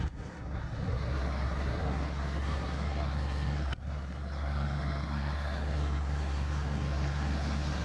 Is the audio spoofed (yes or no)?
yes